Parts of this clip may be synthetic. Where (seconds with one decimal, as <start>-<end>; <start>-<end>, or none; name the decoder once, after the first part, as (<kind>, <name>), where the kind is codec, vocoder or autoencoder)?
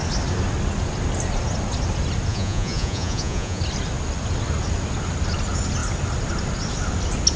2.3-3.6 (vocoder, Vocos)